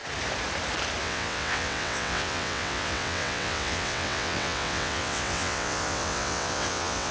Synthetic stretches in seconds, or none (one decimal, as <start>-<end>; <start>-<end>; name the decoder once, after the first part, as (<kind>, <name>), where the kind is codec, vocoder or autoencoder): 1.0-7.1 (vocoder, WaveNeXt)